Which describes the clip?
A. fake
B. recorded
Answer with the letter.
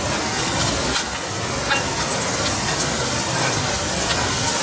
B